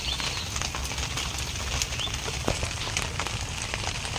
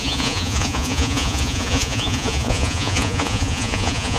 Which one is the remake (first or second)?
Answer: second